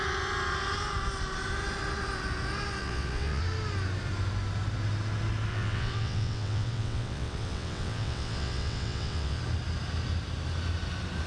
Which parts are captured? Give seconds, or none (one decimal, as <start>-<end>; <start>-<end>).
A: 0.0-2.8; 3.4-5.5; 9.4-11.3